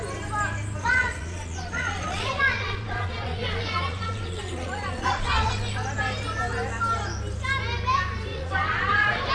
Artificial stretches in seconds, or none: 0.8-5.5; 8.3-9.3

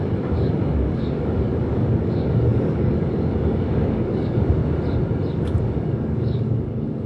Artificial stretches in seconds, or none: 0.0-4.6; 5.3-7.1

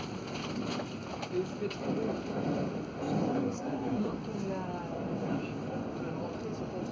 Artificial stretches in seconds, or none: 3.3-4.1

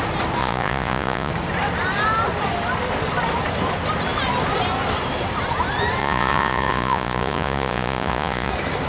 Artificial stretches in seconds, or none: 0.4-1.3; 6.0-8.5

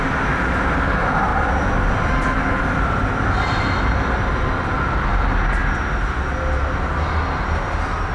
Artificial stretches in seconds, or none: none

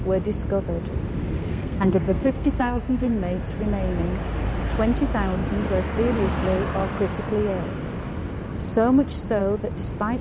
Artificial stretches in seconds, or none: 1.4-3.1

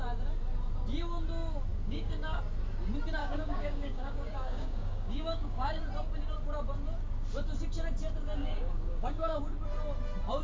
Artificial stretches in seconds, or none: 1.7-2.4; 3.2-5.8; 8.4-9.4